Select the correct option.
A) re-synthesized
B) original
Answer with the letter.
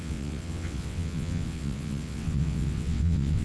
A